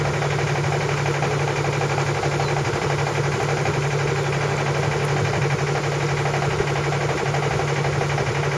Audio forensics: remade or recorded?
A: recorded